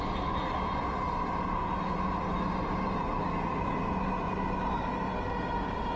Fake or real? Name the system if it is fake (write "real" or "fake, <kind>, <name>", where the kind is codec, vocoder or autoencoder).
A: real